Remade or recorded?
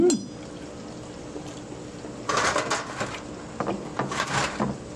recorded